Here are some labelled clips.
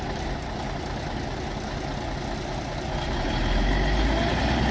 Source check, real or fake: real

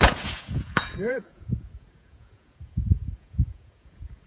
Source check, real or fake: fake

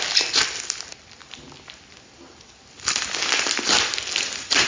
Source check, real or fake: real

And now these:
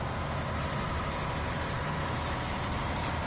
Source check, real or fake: real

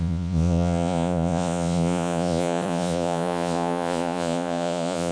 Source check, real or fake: fake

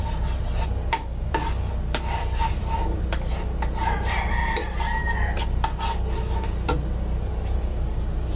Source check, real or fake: real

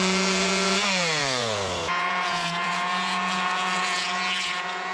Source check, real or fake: fake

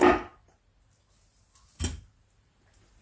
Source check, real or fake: real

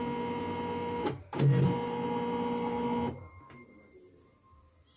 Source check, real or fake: real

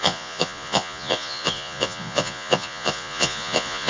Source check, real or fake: fake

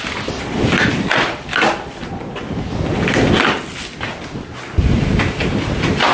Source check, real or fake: real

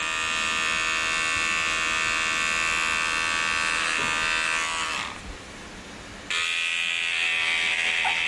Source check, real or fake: real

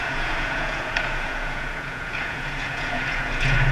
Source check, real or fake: fake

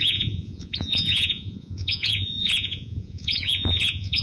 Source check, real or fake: fake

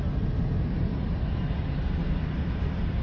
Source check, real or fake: real